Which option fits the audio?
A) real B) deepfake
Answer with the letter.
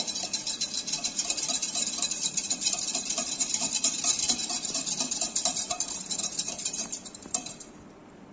B